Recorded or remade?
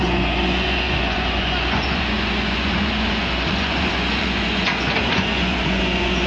remade